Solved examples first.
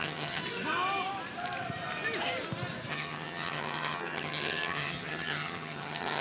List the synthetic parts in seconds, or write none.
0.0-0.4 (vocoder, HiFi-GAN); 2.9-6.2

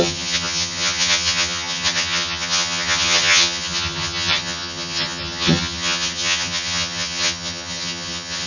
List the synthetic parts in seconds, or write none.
0.0-8.5 (vocoder, HiFi-GAN)

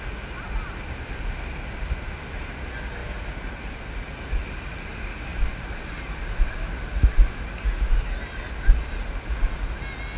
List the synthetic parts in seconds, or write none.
none

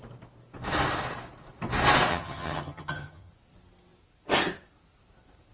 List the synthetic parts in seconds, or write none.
2.1-3.3 (vocoder, HiFi-GAN)

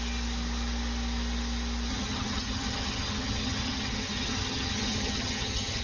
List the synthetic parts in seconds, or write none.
1.9-5.8 (vocoder, HiFi-GAN)

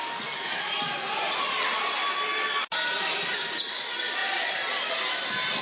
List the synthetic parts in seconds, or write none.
none

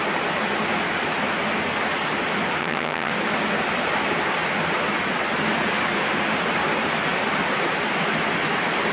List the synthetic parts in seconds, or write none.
2.6-3.1 (vocoder, HiFi-GAN)